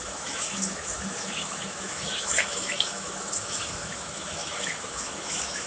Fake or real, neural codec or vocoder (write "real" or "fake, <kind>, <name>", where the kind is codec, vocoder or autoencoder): fake, autoencoder, DAC-VAE